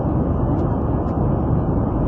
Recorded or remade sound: recorded